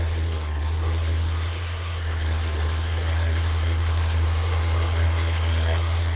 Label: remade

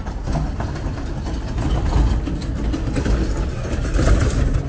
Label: recorded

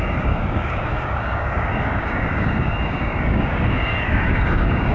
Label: remade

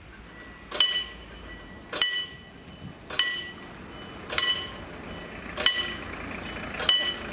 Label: recorded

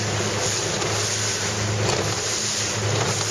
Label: recorded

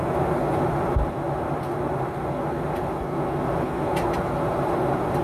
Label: recorded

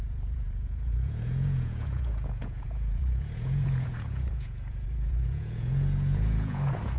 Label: remade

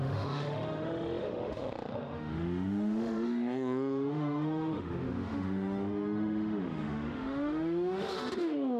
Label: remade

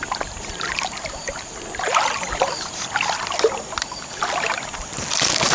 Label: recorded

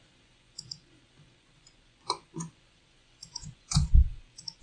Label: remade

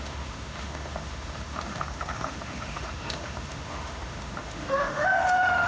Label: remade